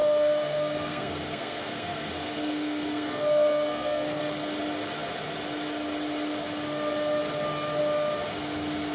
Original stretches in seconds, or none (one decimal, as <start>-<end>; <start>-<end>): 4.2-8.9